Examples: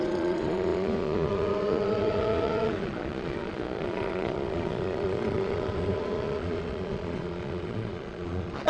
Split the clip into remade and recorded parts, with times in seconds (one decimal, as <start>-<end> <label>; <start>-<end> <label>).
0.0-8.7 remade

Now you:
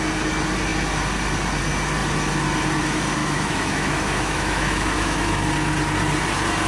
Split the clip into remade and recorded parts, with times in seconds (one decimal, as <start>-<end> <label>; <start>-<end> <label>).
0.0-3.2 recorded; 3.2-5.4 remade; 5.4-6.7 recorded

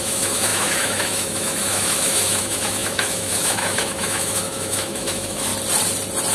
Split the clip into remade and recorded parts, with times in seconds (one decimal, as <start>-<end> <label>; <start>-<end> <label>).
0.0-5.5 remade; 5.5-6.3 recorded